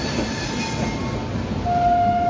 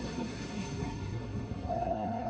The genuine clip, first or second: first